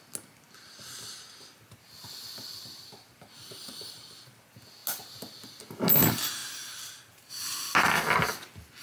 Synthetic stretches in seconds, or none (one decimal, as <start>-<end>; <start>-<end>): none